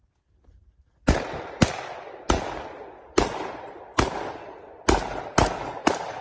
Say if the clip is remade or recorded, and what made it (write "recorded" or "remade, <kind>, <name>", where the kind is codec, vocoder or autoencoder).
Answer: recorded